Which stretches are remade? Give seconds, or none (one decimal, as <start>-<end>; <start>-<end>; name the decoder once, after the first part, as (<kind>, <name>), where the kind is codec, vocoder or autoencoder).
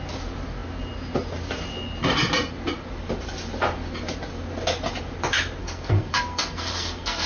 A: 5.6-7.3 (codec, SNAC)